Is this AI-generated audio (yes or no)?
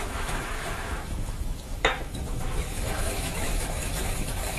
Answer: yes